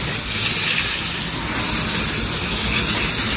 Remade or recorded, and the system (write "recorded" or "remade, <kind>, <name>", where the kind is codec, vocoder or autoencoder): recorded